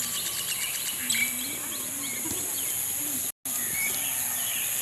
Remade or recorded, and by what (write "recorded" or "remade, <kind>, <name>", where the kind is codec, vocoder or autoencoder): recorded